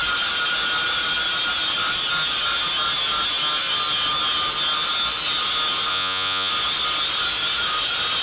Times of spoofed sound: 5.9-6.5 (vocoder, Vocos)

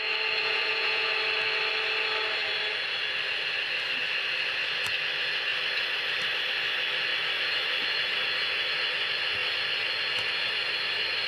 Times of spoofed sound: 0.4-1.1 (vocoder, Vocos)

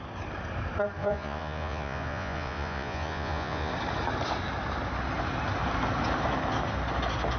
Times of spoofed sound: 1.0-3.7 (vocoder, Vocos)

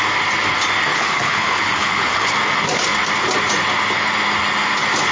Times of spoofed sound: 0.9-2.3 (codec, HILCodec)